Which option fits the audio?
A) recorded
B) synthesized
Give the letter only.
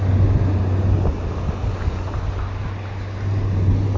A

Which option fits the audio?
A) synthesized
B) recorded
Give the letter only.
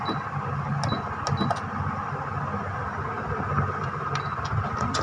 B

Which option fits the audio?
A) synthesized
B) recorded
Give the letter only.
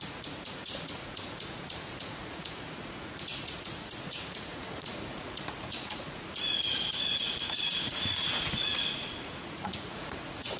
A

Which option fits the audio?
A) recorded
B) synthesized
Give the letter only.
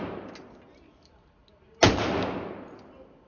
A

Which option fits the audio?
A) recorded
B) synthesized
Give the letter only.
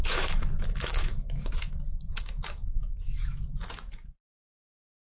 B